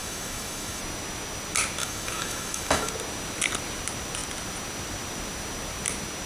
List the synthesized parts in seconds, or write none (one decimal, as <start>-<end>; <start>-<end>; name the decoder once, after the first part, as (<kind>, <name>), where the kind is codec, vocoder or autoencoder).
0.0-0.8 (autoencoder, DAC-VAE); 1.8-2.9